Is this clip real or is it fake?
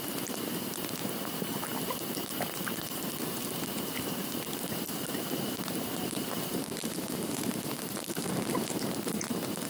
fake